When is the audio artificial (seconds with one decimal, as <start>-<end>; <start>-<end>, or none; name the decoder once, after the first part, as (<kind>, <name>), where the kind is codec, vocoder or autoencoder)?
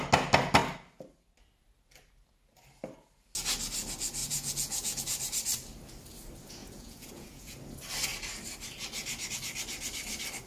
4.2-5.0 (vocoder, Vocos); 6.6-7.6